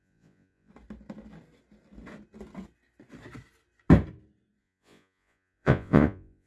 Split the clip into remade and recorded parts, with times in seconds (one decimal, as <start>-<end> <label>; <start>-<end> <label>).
0.0-0.7 remade; 0.7-4.6 recorded; 4.6-6.5 remade